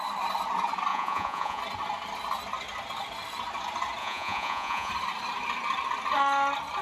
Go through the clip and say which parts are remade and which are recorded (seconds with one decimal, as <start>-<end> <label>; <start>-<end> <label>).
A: 0.0-0.9 recorded; 0.9-1.6 remade; 1.6-4.0 recorded; 4.0-4.9 remade; 4.9-6.8 recorded